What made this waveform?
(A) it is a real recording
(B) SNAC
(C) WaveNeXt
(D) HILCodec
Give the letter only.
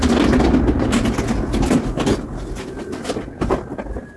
A